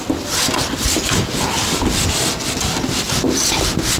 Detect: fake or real real